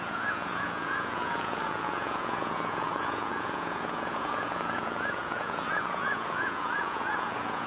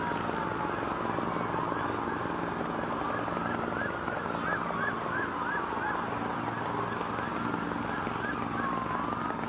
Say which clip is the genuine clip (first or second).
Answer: second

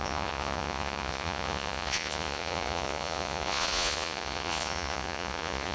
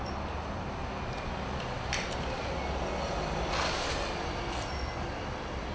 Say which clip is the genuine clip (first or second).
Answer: second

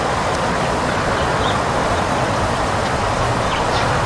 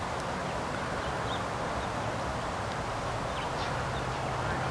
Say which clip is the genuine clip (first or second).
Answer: second